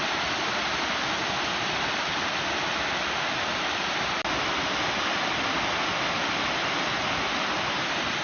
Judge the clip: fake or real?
real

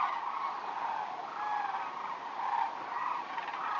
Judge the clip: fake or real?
real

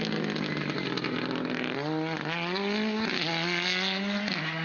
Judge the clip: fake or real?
real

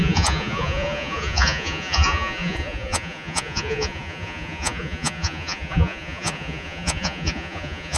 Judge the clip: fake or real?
fake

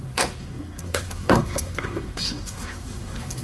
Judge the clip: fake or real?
fake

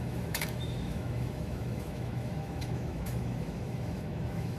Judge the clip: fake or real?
fake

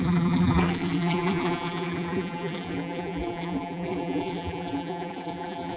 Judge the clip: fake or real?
fake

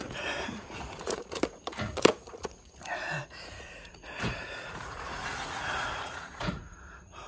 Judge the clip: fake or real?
fake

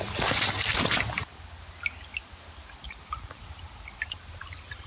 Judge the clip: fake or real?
real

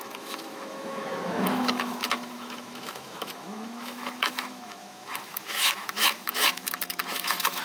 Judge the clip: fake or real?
fake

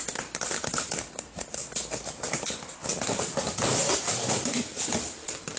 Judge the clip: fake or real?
real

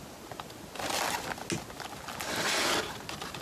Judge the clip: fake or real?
real